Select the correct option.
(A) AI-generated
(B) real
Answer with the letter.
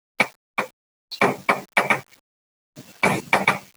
B